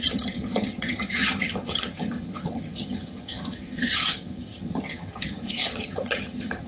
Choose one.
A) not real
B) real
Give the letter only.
A